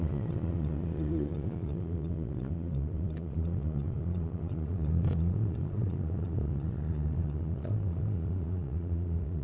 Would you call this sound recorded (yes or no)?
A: no